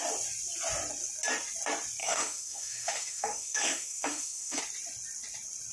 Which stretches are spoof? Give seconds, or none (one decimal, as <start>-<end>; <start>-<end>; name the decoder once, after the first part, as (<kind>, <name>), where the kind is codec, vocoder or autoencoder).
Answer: 2.0-4.6 (autoencoder, DAC-VAE)